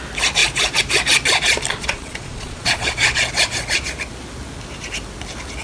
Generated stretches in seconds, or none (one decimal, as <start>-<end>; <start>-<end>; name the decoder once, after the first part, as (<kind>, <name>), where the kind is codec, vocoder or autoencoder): 1.7-3.2 (vocoder, Vocos)

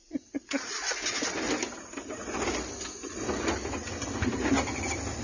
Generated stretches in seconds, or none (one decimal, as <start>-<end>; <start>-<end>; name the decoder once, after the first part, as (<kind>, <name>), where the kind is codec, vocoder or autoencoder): 0.0-0.9 (vocoder, Vocos)

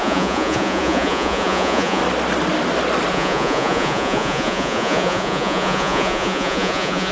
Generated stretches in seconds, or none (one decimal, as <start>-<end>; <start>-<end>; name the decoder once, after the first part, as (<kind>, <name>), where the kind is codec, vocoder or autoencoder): 0.0-2.0 (vocoder, Vocos); 3.1-7.1

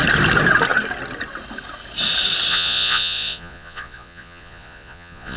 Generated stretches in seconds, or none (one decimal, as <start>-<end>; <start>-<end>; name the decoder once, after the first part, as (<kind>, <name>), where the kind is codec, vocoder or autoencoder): 2.5-5.4 (vocoder, Vocos)

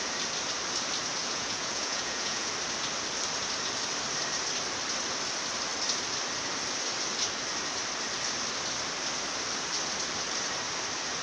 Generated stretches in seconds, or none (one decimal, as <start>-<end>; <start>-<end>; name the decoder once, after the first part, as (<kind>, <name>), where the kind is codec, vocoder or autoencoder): 1.2-2.5 (vocoder, Vocos)

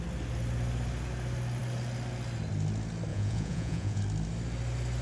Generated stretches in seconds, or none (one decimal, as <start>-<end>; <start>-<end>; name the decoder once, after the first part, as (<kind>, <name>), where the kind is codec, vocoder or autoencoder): 3.1-4.0 (vocoder, Vocos)

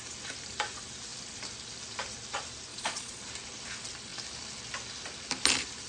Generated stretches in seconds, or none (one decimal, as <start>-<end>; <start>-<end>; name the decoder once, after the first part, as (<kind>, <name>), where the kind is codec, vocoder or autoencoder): 2.7-3.2 (vocoder, Vocos)

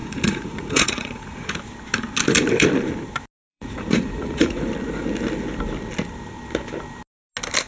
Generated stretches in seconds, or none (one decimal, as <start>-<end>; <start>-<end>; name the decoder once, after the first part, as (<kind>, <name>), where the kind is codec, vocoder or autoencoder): 0.0-1.5 (vocoder, Vocos); 3.5-4.7